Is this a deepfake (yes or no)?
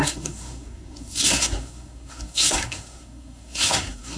yes